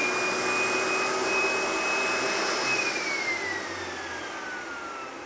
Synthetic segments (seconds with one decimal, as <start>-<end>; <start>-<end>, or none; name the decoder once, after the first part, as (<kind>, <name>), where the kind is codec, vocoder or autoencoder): none